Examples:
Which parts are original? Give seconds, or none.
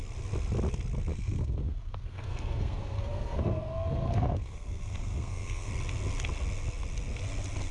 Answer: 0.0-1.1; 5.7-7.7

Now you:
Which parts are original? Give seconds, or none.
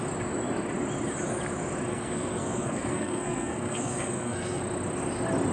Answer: 0.0-1.9; 4.6-5.5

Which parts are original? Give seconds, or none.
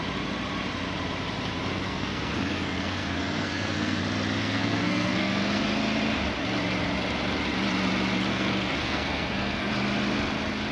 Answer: 0.0-1.7; 4.0-4.4; 5.6-8.3; 9.7-10.7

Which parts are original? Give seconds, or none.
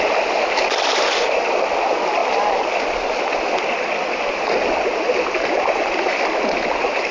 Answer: 0.0-7.1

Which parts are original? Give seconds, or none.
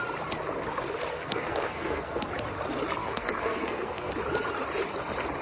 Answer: 0.0-1.1; 2.2-3.0; 4.1-5.4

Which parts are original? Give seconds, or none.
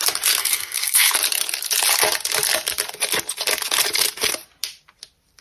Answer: 0.0-0.4; 1.1-5.4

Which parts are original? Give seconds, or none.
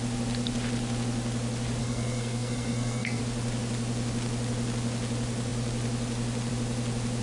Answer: 0.0-1.8; 3.2-7.2